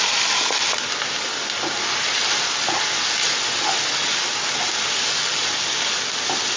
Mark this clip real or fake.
real